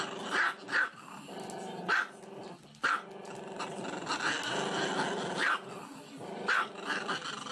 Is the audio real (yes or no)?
yes